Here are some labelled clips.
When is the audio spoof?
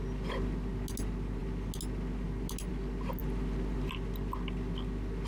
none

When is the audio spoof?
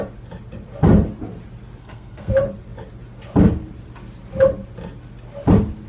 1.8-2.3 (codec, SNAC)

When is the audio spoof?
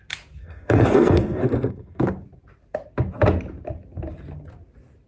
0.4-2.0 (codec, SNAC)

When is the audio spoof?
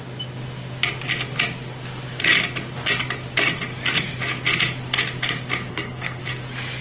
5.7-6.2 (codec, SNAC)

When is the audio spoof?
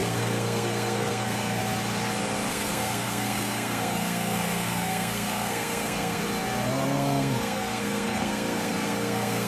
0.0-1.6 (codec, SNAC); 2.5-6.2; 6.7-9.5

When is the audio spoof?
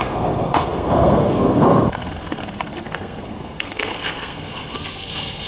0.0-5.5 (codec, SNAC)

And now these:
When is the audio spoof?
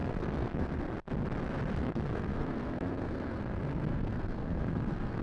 0.0-0.8 (codec, SNAC); 1.8-5.2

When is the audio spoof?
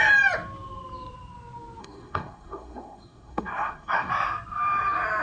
1.8-4.1 (codec, SNAC)